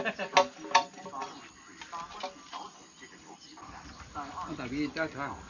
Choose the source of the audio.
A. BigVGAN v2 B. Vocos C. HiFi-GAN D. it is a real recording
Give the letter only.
D